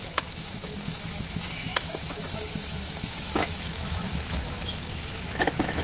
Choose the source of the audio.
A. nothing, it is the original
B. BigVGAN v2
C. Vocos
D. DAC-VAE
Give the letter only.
D